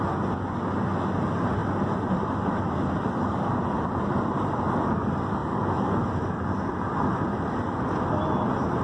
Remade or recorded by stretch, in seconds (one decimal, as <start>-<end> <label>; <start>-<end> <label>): 0.0-8.8 recorded